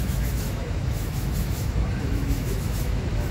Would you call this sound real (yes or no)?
no